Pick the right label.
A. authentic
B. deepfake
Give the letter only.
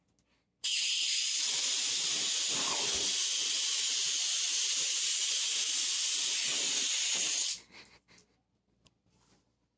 A